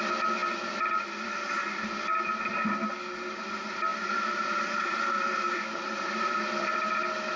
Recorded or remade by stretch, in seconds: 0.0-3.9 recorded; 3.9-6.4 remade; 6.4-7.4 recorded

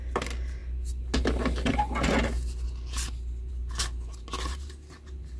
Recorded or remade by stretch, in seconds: 0.0-5.4 recorded

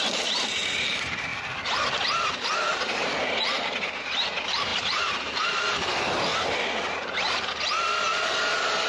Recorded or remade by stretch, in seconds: 0.0-1.3 remade; 1.3-2.2 recorded; 2.2-6.3 remade; 6.3-6.9 recorded; 6.9-8.9 remade

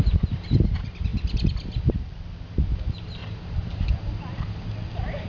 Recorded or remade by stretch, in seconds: 0.0-3.2 recorded; 3.2-4.6 remade; 4.6-5.3 recorded

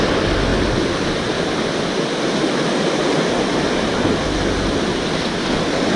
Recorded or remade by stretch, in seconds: 0.0-6.0 recorded

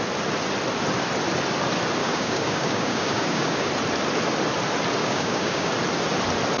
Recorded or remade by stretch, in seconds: 0.0-2.0 recorded; 2.0-3.7 remade; 3.7-5.0 recorded; 5.0-5.7 remade; 5.7-6.6 recorded

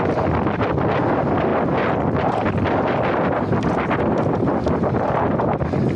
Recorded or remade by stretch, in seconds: 0.0-6.0 recorded

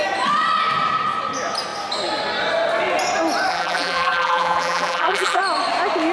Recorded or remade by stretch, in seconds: 0.0-3.5 recorded; 3.5-5.4 remade; 5.4-6.1 recorded